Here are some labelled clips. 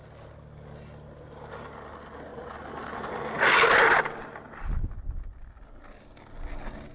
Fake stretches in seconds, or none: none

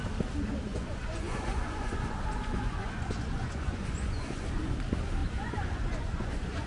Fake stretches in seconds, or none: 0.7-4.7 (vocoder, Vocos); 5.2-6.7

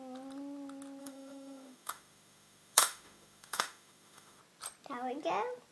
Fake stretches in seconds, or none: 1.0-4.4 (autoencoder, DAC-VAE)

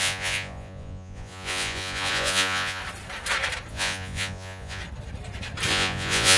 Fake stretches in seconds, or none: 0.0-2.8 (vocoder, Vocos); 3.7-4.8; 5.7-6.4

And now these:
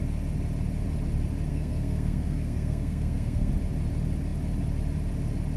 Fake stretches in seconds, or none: 1.5-3.5 (codec, SNAC)

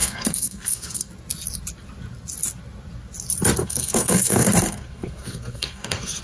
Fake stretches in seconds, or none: 0.0-1.1 (codec, SNAC); 3.6-6.2

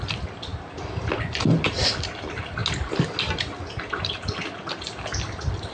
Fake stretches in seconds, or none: 0.0-2.6 (vocoder, BigVGAN v2); 3.2-5.7

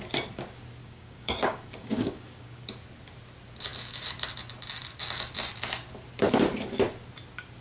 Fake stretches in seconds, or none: 0.8-2.7 (codec, DAC)